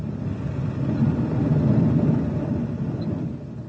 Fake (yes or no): no